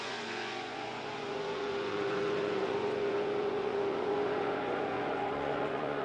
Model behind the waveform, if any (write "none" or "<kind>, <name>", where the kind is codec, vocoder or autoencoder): vocoder, Vocos